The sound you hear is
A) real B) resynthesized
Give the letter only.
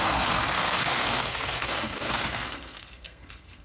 B